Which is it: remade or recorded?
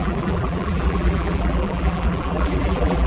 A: remade